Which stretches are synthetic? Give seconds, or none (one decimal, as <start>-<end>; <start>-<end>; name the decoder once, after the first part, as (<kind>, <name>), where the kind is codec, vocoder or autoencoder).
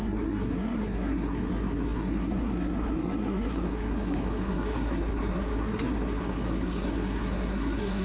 0.0-8.0 (codec, SNAC)